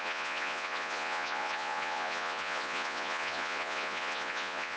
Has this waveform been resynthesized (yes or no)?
yes